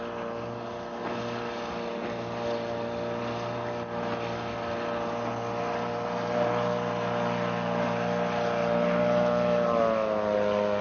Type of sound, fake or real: real